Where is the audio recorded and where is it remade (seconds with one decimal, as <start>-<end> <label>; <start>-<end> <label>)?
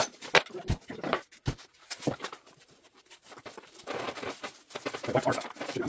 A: 0.0-1.7 recorded; 1.7-4.5 remade; 4.5-5.9 recorded